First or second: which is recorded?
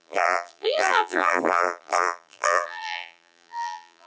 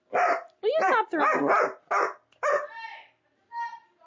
second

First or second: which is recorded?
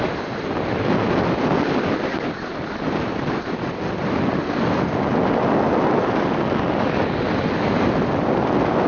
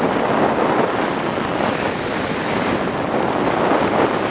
first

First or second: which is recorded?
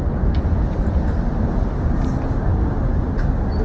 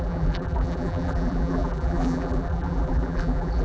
first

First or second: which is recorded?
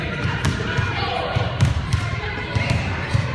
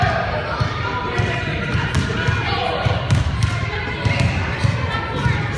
second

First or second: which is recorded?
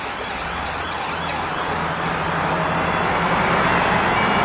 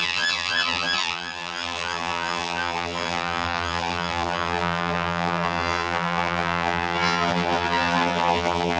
first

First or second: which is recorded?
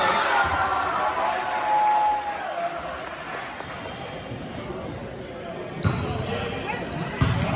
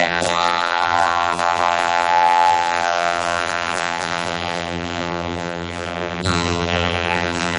first